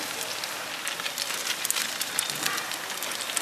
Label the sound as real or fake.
real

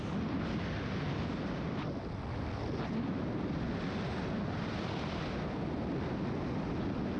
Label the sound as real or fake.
real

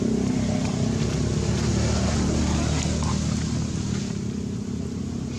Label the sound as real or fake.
real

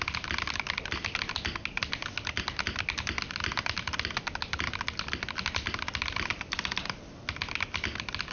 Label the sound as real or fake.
real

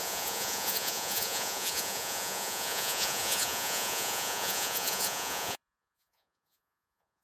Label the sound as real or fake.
fake